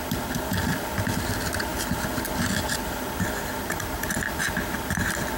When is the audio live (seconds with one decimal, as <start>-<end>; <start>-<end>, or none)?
0.0-5.4